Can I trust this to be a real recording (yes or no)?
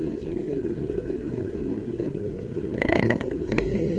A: no